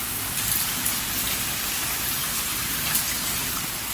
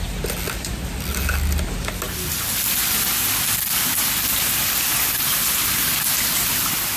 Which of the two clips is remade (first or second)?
first